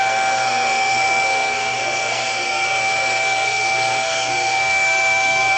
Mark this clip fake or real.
fake